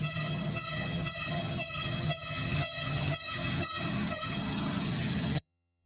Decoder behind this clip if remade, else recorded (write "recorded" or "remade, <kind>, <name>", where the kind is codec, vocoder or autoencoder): remade, vocoder, HiFi-GAN